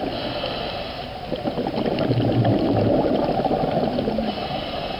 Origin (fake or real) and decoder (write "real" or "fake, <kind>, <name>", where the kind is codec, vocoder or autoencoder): real